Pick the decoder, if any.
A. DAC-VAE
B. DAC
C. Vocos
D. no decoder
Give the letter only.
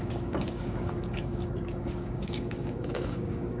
B